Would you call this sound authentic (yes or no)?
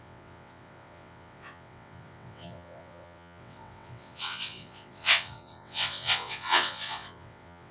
no